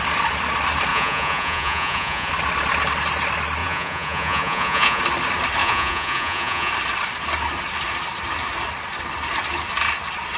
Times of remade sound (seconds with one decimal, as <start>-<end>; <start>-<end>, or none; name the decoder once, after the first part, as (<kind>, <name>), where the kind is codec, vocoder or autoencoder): 0.9-2.3 (vocoder, Vocos); 3.6-5.0; 5.6-6.7